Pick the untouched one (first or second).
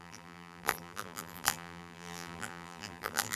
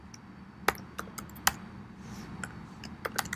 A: second